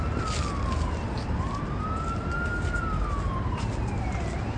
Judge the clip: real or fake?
real